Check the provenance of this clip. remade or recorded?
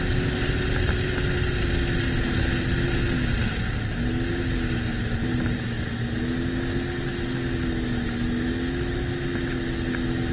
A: recorded